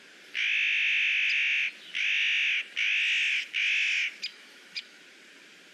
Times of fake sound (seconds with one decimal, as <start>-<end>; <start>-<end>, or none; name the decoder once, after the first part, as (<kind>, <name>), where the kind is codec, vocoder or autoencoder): 4.3-5.0 (autoencoder, DAC-VAE)